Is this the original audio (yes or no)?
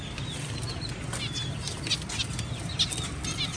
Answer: yes